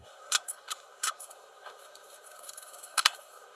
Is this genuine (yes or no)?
no